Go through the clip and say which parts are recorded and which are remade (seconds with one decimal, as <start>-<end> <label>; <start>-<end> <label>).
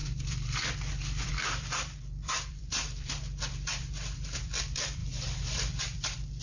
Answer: 0.0-6.4 remade